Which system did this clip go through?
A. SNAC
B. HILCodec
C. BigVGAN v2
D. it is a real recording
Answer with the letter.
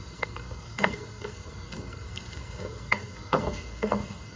A